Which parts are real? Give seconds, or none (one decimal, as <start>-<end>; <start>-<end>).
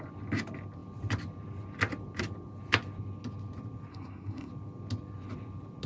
0.0-3.9; 4.5-5.9